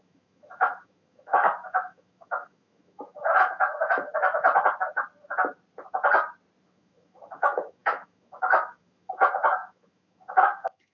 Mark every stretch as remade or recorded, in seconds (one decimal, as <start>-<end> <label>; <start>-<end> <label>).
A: 0.0-4.1 remade; 4.1-6.6 recorded; 6.6-10.9 remade